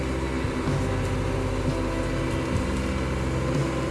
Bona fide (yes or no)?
yes